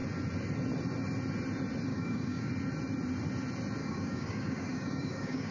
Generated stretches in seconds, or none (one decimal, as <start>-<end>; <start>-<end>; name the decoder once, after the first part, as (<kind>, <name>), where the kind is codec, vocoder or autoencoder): 1.9-2.5 (codec, DAC); 3.8-5.5